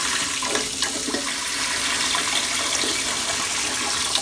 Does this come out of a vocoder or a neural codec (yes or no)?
no